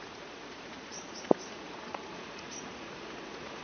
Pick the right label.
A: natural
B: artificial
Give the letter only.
B